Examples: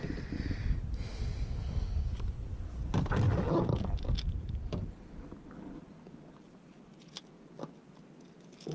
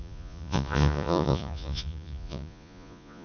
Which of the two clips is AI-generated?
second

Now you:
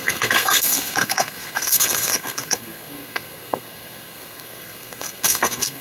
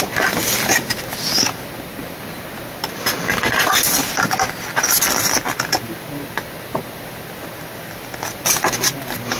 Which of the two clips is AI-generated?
first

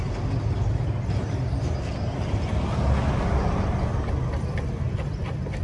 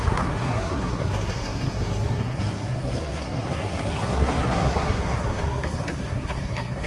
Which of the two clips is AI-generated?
second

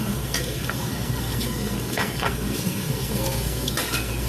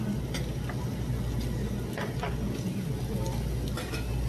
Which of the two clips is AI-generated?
first